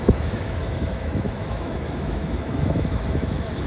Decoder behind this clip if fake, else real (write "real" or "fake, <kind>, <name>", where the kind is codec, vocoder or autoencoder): fake, autoencoder, DAC-VAE